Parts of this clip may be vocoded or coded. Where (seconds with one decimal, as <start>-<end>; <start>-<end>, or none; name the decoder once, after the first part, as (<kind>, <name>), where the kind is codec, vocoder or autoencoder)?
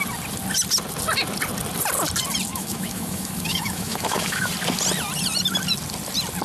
2.5-4.5 (autoencoder, DAC-VAE)